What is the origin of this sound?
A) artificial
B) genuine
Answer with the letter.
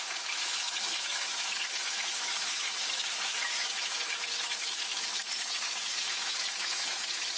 A